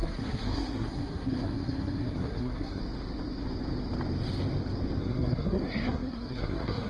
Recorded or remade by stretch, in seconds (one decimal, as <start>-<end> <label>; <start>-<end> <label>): 0.0-2.8 remade; 2.8-5.0 recorded; 5.0-6.9 remade